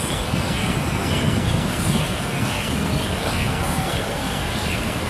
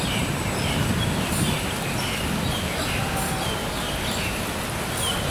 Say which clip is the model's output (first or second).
first